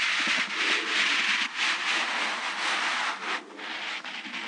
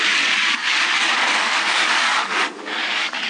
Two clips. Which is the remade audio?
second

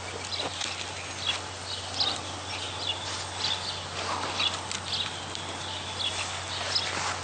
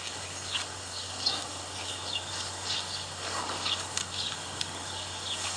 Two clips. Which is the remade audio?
second